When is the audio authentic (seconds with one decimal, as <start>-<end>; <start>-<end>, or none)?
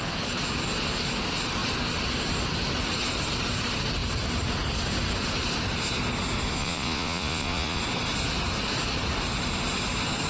0.0-6.6; 7.8-10.3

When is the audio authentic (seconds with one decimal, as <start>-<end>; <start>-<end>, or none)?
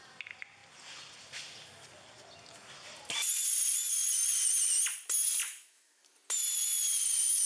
0.0-5.4; 6.0-7.5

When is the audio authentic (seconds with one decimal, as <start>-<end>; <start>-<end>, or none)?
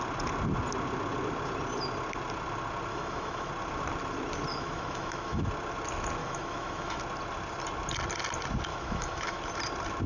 0.0-2.9; 3.5-4.5; 5.4-6.2; 7.0-8.7; 9.4-10.1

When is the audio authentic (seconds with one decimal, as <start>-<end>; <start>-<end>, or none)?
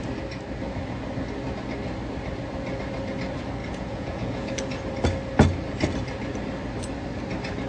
0.0-3.6; 4.5-7.7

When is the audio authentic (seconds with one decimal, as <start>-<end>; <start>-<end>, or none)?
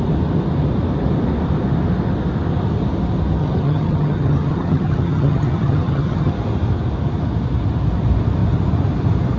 0.0-3.4; 6.3-9.4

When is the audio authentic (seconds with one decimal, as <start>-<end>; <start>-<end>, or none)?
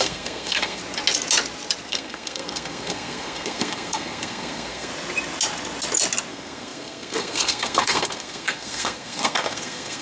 0.8-1.9; 4.9-6.3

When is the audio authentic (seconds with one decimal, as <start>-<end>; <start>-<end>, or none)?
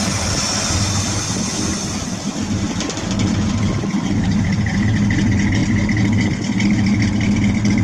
0.0-7.8